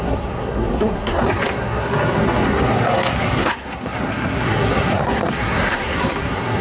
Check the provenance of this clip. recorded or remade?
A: remade